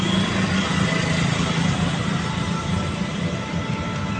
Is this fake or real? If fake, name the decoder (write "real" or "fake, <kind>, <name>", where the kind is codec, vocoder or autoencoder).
real